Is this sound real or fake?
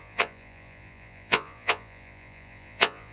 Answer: fake